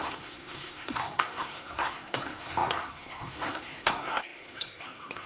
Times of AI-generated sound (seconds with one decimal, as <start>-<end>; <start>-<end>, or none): 0.0-5.3